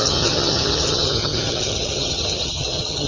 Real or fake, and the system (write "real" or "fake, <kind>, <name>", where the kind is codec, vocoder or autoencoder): fake, vocoder, HiFi-GAN